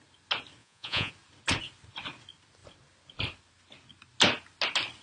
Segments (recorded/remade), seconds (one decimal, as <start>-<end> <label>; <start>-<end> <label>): 0.0-0.6 recorded; 0.6-1.1 remade; 1.1-5.0 recorded